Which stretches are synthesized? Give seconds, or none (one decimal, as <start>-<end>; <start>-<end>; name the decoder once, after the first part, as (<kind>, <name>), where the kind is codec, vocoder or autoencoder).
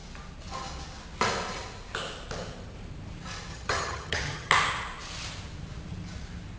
3.5-4.5 (vocoder, HiFi-GAN)